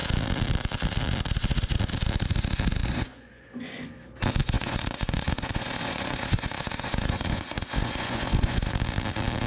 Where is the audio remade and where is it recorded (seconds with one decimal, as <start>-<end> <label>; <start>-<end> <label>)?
0.0-2.8 recorded; 2.8-3.9 remade; 3.9-4.4 recorded; 4.4-8.7 remade; 8.7-9.5 recorded